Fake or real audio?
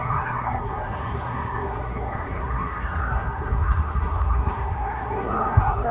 fake